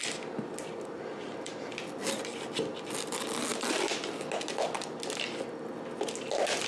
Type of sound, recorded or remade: recorded